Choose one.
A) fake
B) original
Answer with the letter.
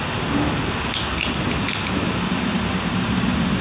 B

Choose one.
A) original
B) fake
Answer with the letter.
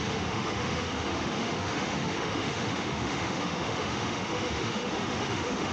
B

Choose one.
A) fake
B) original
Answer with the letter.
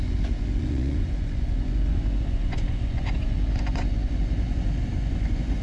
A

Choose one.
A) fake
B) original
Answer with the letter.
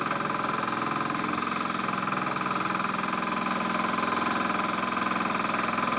B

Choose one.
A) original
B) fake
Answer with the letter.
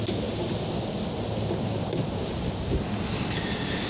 A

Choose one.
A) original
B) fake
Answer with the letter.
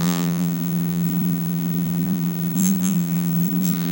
B